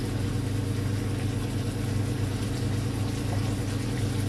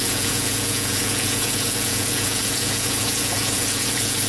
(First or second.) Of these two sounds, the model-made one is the second